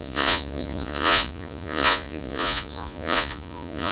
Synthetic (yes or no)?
yes